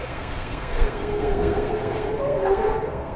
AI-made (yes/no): yes